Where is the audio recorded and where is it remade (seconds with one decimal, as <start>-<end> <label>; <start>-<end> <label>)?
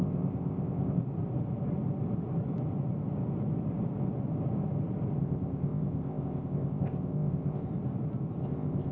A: 0.0-1.0 remade; 1.0-5.2 recorded; 5.2-7.7 remade; 7.7-8.4 recorded; 8.4-8.9 remade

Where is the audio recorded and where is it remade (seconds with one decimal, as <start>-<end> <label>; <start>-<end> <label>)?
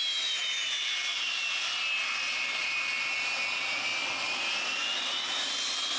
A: 0.0-6.0 recorded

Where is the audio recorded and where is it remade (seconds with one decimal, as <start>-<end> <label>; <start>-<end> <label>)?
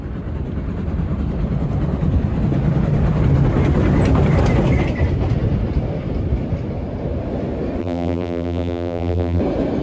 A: 0.0-7.8 recorded; 7.8-9.4 remade; 9.4-9.8 recorded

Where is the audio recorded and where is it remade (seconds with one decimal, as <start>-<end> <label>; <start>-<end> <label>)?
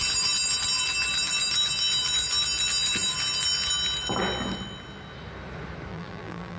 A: 0.0-5.9 recorded; 5.9-6.6 remade